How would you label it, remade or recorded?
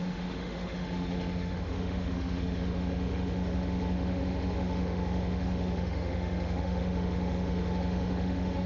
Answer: remade